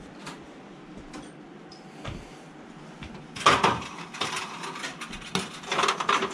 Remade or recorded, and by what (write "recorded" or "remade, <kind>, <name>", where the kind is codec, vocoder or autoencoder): recorded